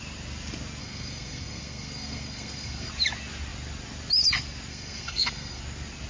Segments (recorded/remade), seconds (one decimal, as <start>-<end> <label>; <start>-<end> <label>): 0.0-0.8 recorded; 0.8-2.9 remade; 2.9-4.7 recorded; 4.7-5.6 remade; 5.6-6.1 recorded